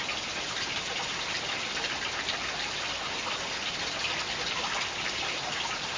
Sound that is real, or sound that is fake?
real